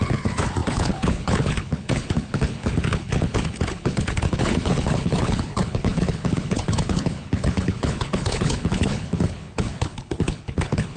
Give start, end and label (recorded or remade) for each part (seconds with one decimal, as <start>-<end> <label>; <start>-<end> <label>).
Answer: 0.0-11.0 remade